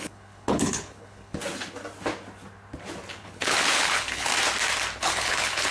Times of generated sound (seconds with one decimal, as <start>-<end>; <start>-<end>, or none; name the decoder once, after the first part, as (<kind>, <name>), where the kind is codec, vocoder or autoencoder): 0.0-1.4 (codec, HILCodec); 3.1-4.3; 5.0-5.7